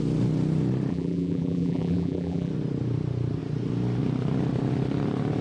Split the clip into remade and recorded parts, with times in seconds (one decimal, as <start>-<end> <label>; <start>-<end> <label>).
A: 0.0-0.9 recorded; 0.9-2.5 remade; 2.5-5.4 recorded

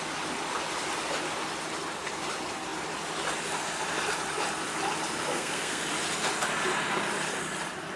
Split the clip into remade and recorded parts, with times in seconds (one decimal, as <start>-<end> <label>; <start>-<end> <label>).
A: 0.0-5.3 recorded; 5.3-5.8 remade; 5.8-8.0 recorded